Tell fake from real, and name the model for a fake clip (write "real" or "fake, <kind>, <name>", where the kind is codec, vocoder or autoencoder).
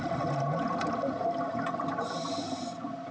real